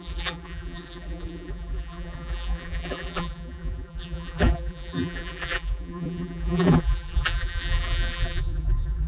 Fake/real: fake